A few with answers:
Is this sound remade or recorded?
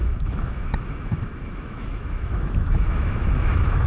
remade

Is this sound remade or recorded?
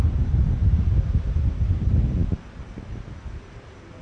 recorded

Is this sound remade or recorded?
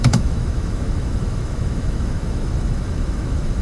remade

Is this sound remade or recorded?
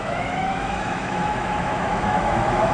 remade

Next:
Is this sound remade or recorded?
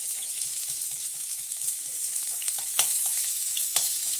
remade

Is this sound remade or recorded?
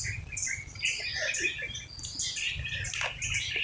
recorded